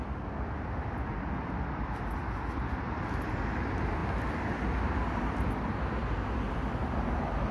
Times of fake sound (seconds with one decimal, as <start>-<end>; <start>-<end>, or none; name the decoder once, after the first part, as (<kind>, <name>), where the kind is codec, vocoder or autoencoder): none